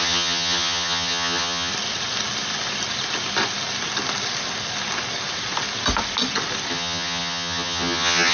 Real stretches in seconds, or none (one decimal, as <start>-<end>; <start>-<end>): 1.7-6.7